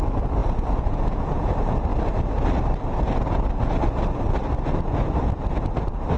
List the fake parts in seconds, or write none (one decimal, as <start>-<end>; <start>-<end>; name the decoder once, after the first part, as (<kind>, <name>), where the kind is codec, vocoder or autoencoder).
0.4-1.5 (vocoder, Vocos)